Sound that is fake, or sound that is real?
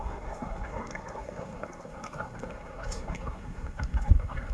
fake